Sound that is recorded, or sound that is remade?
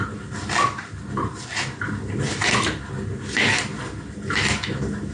recorded